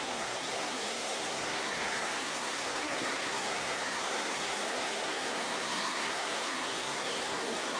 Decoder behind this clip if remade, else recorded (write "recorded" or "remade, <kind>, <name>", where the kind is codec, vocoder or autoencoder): remade, codec, SNAC